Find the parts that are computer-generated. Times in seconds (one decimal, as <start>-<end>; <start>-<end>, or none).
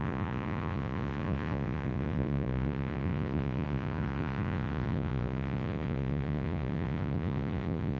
0.0-8.0